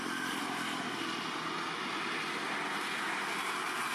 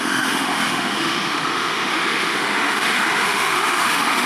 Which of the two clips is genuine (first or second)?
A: first